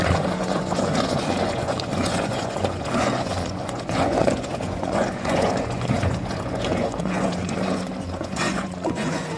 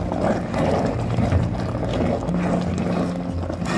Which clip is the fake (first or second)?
first